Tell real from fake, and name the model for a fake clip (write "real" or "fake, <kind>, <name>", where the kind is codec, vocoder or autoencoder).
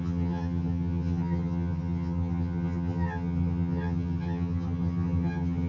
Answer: fake, vocoder, HiFi-GAN